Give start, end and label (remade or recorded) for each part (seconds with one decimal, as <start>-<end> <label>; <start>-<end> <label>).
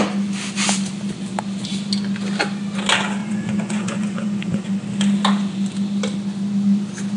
0.0-3.2 recorded; 3.2-4.7 remade; 4.7-7.2 recorded